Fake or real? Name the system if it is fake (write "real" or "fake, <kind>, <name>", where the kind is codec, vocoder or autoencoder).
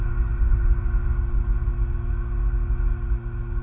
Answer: real